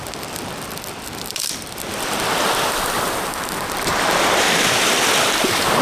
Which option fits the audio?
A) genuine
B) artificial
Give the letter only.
B